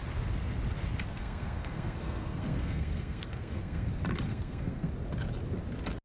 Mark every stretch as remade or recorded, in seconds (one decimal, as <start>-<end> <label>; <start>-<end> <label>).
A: 0.0-1.1 recorded; 1.1-3.9 remade; 3.9-4.3 recorded; 4.3-4.9 remade; 4.9-6.0 recorded